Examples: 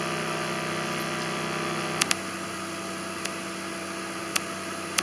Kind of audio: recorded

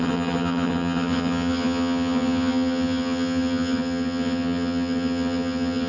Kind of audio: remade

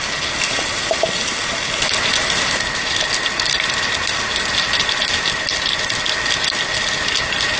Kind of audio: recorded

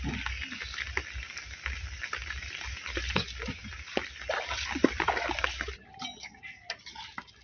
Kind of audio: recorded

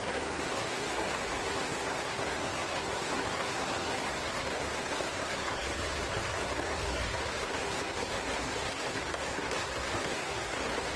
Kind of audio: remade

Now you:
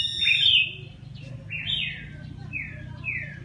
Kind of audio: recorded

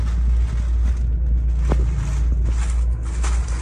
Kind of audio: recorded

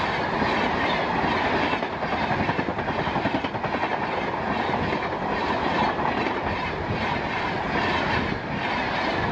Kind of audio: recorded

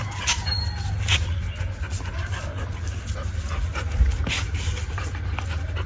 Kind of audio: recorded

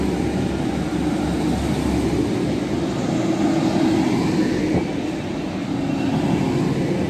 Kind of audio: recorded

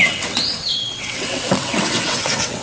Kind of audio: remade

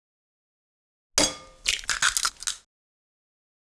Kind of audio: recorded